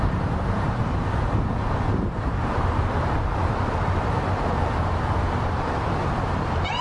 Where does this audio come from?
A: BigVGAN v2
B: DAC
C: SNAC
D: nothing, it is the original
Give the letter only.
A